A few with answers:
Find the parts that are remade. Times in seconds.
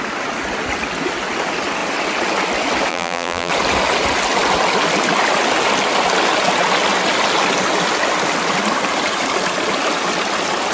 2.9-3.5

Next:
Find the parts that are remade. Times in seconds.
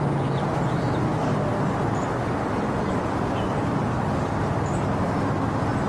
none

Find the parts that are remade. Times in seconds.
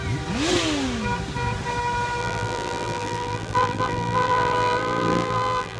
2.2-5.8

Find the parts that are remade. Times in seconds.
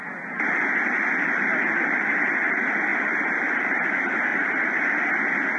1.5-2.2; 2.9-3.9; 4.3-4.8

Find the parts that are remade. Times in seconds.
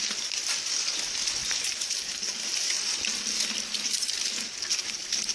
1.4-2.4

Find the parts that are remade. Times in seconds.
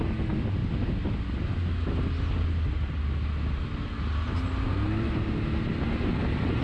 none